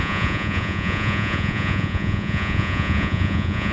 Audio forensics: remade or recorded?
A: remade